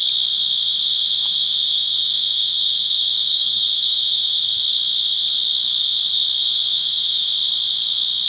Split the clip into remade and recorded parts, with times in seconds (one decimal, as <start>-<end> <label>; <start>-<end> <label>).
0.0-0.8 recorded; 0.8-4.4 remade; 4.4-6.4 recorded; 6.4-7.3 remade; 7.3-8.3 recorded